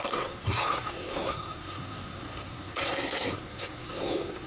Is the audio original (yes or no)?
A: no